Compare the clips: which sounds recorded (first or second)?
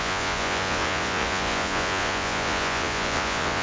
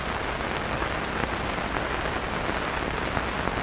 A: second